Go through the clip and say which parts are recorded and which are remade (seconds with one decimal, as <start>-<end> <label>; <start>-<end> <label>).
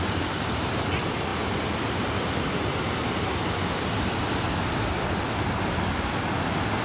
0.0-6.8 recorded